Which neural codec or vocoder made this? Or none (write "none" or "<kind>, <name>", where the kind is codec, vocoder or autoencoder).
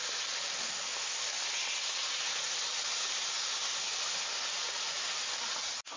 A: none